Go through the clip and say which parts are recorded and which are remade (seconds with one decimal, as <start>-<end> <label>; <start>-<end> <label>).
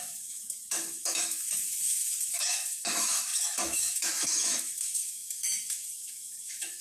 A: 0.0-6.8 remade